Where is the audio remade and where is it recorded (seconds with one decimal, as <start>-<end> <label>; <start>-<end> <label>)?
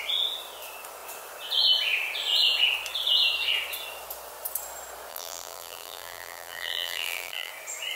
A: 0.0-5.1 recorded; 5.1-7.5 remade; 7.5-8.0 recorded